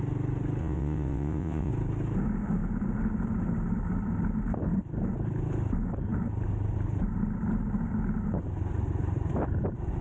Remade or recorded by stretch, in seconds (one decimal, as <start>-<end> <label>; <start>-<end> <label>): 0.0-0.6 recorded; 0.6-1.7 remade; 1.7-10.0 recorded